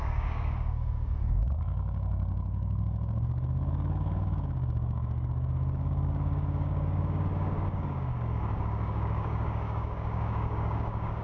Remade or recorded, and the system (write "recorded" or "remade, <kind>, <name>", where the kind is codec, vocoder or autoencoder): remade, codec, DAC